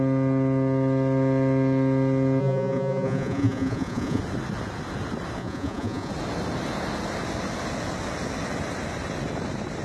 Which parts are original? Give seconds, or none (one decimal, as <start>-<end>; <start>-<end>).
0.0-2.4; 4.2-5.4; 6.1-9.8